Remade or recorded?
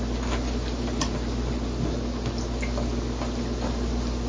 recorded